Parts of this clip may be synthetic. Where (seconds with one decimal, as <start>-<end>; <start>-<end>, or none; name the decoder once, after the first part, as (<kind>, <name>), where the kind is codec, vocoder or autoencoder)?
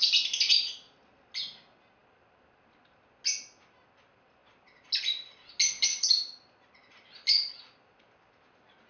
none